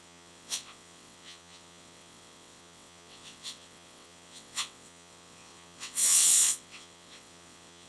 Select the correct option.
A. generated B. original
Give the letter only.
A